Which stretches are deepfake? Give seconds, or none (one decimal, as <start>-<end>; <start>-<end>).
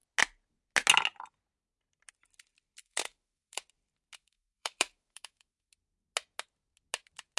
2.8-3.6; 4.2-5.7